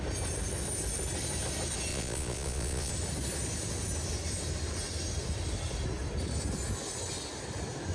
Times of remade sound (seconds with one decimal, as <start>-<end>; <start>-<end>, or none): 1.9-2.9